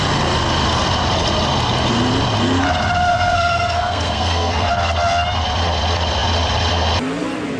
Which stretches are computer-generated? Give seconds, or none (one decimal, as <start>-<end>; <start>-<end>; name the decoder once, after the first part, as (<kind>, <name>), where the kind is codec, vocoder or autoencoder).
3.1-4.7 (codec, SNAC)